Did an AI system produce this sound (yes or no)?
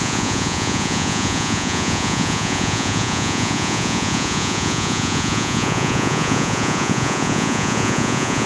yes